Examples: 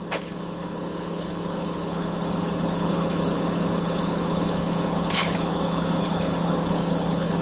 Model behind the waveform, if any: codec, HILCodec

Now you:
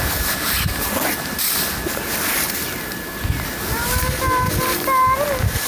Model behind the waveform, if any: none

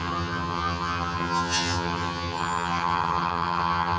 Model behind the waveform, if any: vocoder, HiFi-GAN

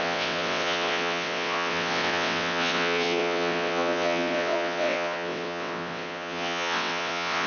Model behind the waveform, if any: vocoder, WaveNeXt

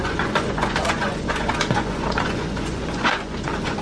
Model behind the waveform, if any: vocoder, Vocos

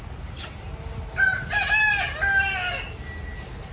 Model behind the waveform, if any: none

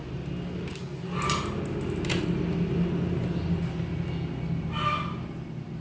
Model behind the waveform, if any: none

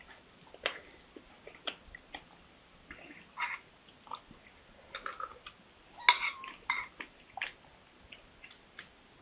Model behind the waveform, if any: none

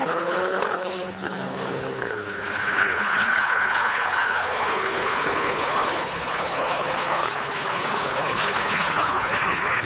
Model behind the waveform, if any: codec, HILCodec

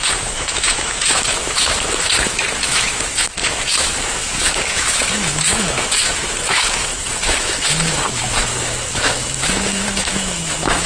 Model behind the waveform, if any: autoencoder, DAC-VAE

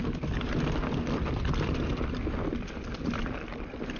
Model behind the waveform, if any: none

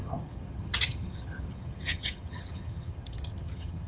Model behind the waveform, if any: vocoder, HiFi-GAN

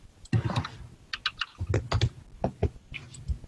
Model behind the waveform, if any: none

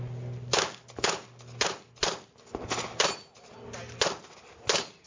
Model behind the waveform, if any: none